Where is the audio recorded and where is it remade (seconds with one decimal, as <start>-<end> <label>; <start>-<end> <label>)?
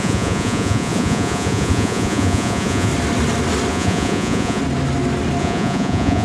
0.0-2.9 remade; 2.9-3.7 recorded; 3.7-4.6 remade; 4.6-5.4 recorded; 5.4-6.2 remade